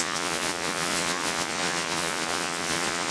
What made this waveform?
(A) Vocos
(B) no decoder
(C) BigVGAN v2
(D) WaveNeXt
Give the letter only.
A